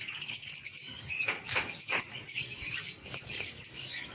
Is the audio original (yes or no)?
no